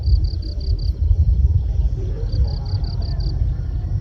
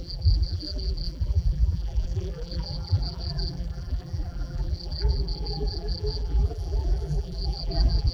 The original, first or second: first